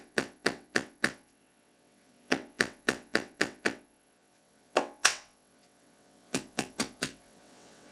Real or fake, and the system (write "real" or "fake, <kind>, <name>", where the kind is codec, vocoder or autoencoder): fake, vocoder, WaveNeXt